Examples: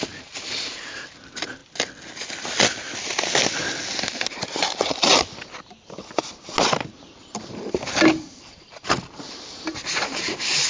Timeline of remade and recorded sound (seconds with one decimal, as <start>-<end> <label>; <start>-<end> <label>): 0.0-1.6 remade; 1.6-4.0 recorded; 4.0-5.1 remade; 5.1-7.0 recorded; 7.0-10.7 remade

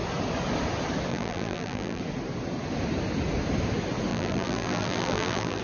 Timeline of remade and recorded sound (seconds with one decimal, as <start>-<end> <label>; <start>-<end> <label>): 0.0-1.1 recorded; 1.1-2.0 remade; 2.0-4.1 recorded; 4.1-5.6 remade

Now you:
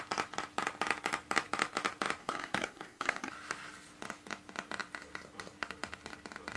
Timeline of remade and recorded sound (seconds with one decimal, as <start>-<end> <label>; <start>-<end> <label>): 0.0-2.2 recorded; 2.2-3.3 remade; 3.3-6.6 recorded